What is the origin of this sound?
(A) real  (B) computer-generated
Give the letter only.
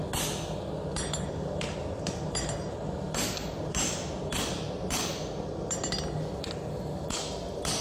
A